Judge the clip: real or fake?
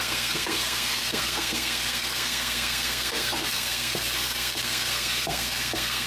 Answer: fake